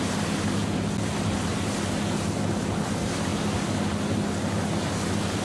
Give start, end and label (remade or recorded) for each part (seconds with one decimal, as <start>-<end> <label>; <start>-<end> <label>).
0.0-5.4 recorded